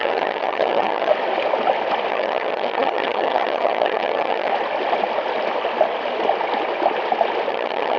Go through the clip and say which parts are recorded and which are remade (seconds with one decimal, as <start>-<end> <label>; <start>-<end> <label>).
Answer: 0.0-1.1 remade; 1.1-2.1 recorded; 2.1-4.5 remade; 4.5-7.5 recorded; 7.5-8.0 remade